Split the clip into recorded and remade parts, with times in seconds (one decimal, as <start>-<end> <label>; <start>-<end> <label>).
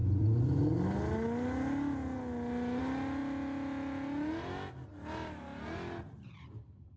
0.0-7.0 recorded